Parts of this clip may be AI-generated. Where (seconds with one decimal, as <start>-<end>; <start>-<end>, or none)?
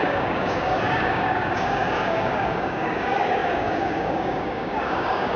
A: 0.0-5.4